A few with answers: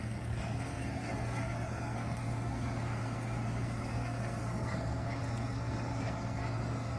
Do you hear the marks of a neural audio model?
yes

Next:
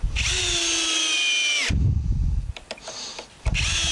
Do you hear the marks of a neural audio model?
no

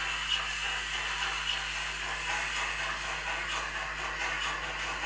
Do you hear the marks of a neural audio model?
no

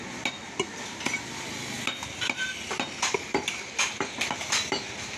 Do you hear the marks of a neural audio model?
no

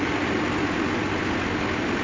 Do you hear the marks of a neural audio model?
no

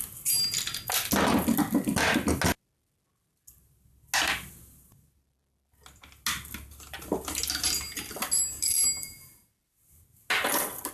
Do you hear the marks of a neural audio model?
no